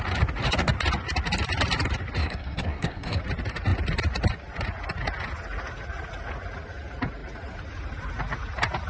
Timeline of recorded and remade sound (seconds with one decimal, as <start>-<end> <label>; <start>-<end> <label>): 0.0-2.2 recorded; 2.2-3.2 remade; 3.2-8.9 recorded